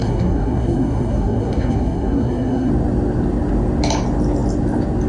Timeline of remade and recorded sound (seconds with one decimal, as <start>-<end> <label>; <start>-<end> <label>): 0.0-2.7 remade; 2.7-5.1 recorded